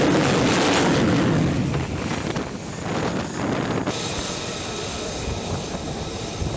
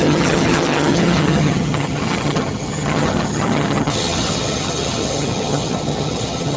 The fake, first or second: second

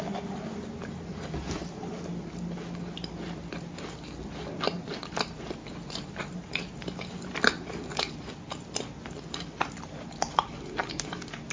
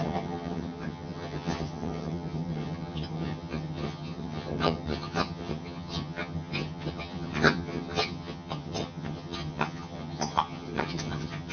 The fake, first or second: second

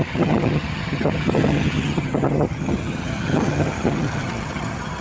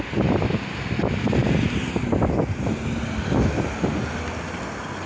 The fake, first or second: first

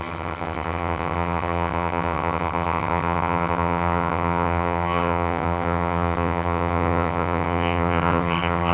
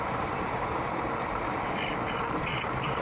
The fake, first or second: first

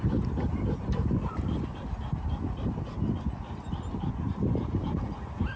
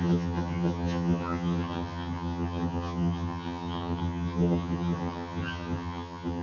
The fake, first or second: second